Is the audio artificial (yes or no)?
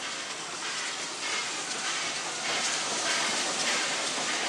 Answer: no